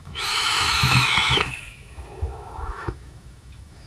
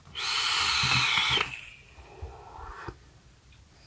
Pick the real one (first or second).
second